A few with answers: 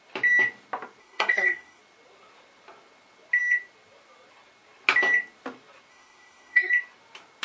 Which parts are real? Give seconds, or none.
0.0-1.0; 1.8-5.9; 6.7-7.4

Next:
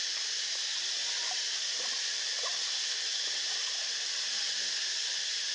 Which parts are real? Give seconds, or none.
0.0-5.5

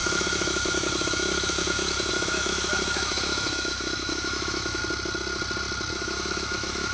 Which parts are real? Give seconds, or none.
4.8-5.9